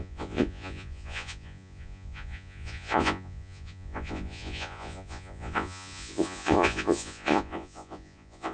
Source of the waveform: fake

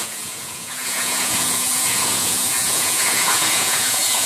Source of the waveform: fake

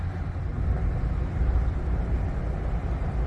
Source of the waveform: real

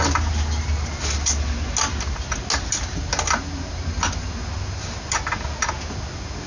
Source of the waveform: real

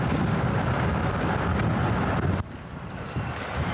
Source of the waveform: real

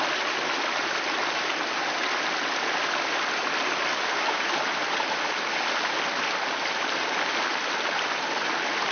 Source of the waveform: real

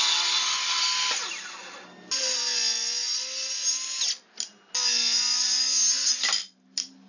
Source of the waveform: real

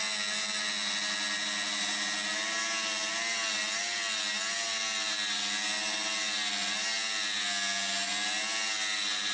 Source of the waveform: real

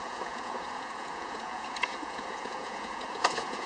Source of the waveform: fake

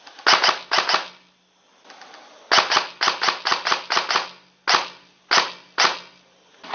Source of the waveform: real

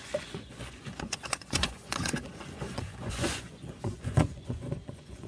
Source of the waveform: fake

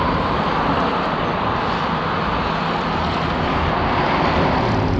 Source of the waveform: real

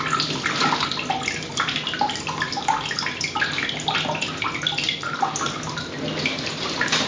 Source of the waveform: real